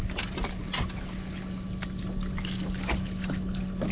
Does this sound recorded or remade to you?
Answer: recorded